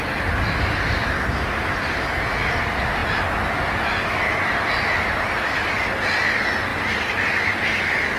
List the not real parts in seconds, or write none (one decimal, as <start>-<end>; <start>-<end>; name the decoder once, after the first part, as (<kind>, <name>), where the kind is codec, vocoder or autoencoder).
6.7-7.3 (vocoder, BigVGAN v2)